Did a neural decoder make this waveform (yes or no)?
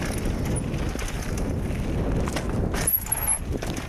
no